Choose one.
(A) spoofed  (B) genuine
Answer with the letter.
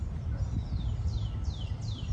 B